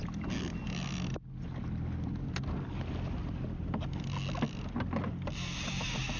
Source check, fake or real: real